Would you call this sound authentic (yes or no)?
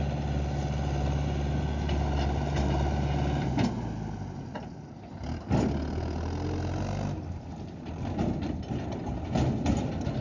yes